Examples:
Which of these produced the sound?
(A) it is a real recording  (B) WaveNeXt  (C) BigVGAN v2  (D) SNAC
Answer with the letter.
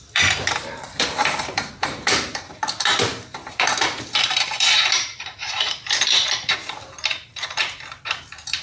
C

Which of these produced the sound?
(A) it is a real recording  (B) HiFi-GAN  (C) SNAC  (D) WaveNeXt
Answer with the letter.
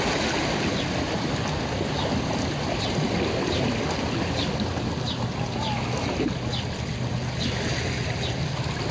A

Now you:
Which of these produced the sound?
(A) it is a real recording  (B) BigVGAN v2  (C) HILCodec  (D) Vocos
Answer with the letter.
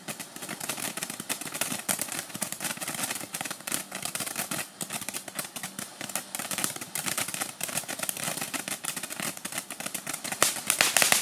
A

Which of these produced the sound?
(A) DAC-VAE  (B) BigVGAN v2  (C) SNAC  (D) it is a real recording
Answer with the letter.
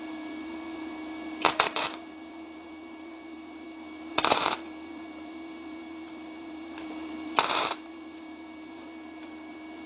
B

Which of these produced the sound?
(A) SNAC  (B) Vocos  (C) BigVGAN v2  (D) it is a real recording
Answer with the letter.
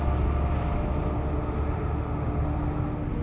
D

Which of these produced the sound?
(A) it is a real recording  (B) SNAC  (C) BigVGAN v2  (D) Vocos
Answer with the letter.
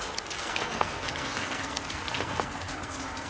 B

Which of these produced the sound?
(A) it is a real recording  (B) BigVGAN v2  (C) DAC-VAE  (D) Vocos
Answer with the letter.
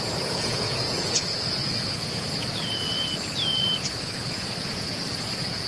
D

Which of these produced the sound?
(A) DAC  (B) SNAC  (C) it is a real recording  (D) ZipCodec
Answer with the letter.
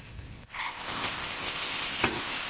D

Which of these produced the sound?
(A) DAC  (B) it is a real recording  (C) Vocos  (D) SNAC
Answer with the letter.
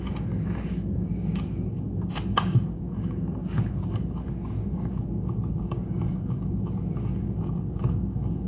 A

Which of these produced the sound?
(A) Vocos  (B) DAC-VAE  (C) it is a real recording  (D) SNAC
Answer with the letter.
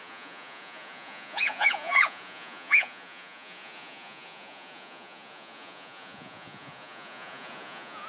A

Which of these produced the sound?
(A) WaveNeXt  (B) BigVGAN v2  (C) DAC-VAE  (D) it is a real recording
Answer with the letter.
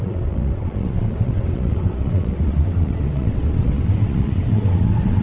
A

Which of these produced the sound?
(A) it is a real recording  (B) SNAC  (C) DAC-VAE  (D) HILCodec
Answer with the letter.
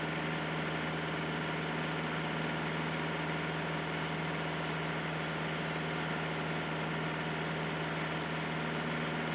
A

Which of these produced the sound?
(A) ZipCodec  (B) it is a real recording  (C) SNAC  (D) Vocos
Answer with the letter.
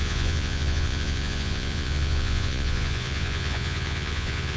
D